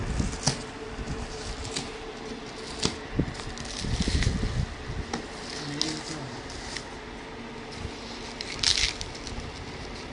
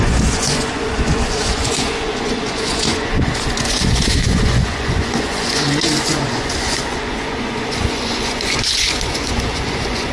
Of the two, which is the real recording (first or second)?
first